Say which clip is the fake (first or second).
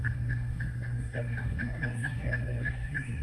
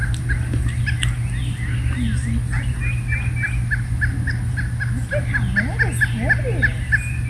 first